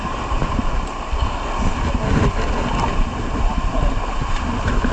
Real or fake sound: real